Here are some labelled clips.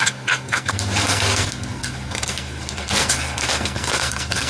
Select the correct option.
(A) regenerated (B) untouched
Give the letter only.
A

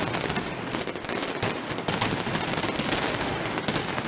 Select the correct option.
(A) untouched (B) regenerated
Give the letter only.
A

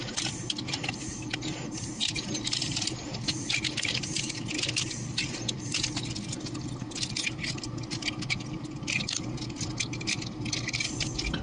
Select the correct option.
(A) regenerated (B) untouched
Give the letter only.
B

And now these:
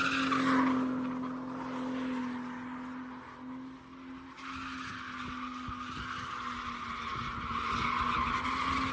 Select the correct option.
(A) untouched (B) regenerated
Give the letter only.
A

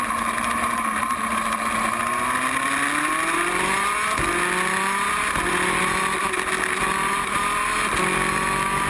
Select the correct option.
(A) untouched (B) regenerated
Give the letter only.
A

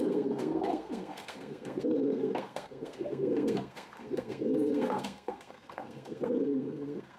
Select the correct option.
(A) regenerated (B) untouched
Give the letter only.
A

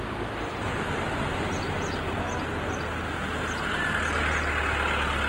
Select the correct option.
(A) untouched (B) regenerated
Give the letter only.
A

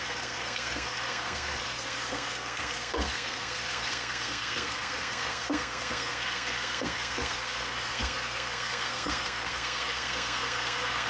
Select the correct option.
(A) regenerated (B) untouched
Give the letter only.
A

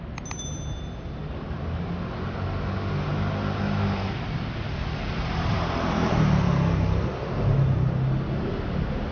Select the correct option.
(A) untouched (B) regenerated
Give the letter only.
A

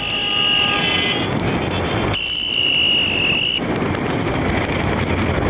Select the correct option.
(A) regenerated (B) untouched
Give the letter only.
B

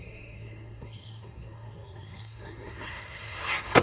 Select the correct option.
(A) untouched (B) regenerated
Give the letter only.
B